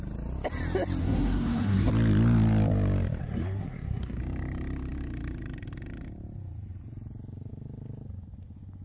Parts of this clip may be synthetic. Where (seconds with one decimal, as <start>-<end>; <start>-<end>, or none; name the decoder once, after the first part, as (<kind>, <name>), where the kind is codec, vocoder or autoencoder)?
1.0-1.9 (codec, SNAC); 3.2-4.2